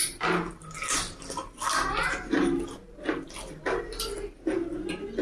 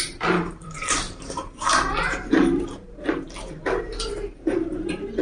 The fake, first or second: second